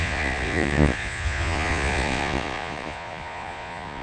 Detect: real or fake fake